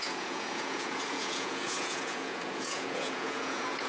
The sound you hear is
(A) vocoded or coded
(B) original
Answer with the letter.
A